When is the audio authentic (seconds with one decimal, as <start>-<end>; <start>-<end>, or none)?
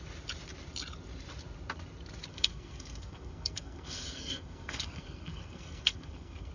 0.0-2.3